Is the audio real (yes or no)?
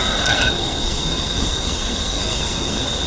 no